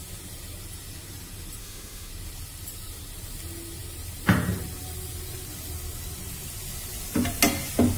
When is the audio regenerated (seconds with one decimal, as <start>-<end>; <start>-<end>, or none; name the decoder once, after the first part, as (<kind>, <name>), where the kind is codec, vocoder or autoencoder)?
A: 1.6-2.1 (autoencoder, DAC-VAE)